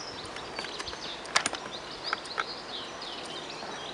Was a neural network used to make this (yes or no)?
no